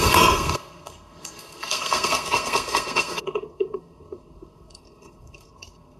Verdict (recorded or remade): remade